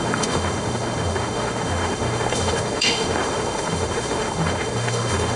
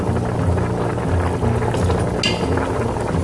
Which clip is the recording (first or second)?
second